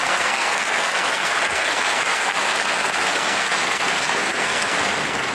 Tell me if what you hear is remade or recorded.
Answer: remade